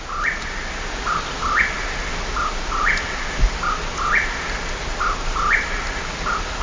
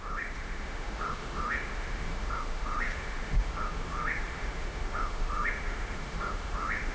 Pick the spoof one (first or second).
second